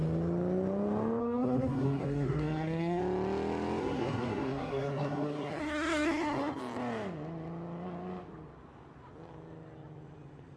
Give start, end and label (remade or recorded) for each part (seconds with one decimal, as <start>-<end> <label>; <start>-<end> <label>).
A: 0.0-1.2 recorded; 1.2-3.0 remade; 3.0-3.8 recorded; 3.8-6.6 remade; 6.6-10.6 recorded